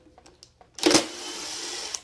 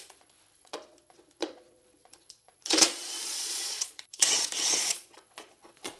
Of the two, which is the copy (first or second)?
second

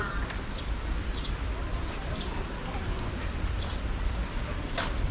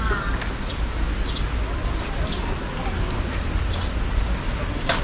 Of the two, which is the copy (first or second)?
first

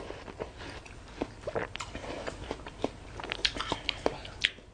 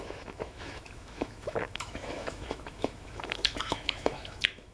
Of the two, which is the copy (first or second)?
second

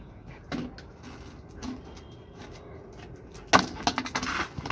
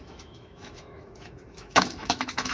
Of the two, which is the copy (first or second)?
second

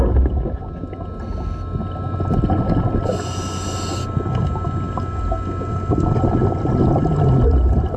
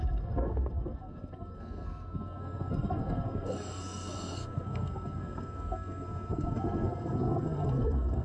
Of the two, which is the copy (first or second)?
second